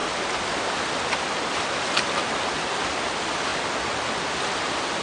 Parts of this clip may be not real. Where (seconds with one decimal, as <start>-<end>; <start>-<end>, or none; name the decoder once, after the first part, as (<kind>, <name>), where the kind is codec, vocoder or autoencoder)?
none